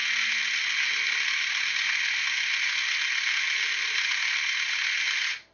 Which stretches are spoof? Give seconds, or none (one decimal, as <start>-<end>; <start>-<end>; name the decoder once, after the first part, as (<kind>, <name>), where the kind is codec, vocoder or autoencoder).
none